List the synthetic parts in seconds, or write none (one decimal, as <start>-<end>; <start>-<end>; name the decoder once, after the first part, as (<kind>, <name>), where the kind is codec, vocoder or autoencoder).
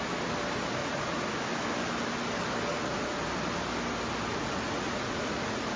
0.8-1.3 (vocoder, Vocos); 2.7-3.2; 4.3-5.8